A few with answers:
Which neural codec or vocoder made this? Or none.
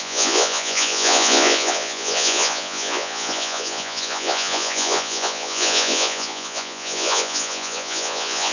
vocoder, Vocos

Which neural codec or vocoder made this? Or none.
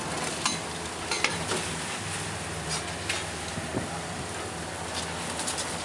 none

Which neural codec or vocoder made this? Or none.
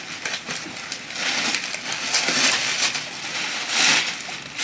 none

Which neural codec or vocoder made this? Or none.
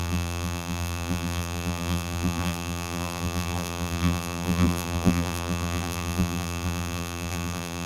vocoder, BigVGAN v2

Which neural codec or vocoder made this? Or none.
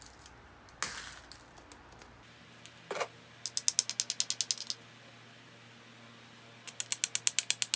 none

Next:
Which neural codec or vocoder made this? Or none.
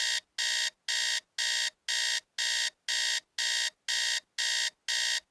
none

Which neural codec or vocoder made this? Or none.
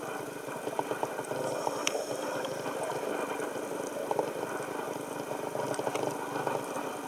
none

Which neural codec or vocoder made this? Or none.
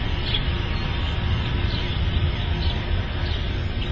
none